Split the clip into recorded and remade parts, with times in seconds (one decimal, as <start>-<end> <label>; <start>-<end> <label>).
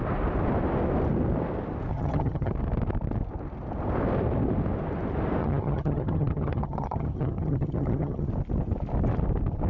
0.0-1.9 recorded; 1.9-2.5 remade; 2.5-5.4 recorded; 5.4-8.3 remade; 8.3-9.7 recorded